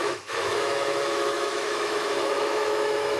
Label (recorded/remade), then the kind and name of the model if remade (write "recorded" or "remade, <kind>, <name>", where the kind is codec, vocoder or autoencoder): remade, autoencoder, DAC-VAE